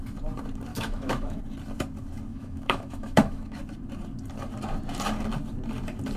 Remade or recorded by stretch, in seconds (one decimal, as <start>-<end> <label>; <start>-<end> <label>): 0.0-0.7 recorded; 0.7-1.4 remade; 1.4-2.3 recorded; 2.3-3.6 remade; 3.6-6.2 recorded